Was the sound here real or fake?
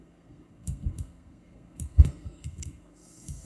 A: fake